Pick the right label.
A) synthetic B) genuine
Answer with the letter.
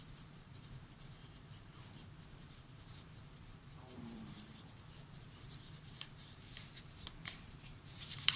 A